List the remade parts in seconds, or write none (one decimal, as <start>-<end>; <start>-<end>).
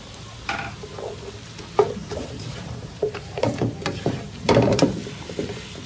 2.0-5.1